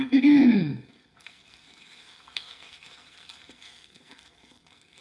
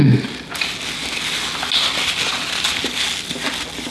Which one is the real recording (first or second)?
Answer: second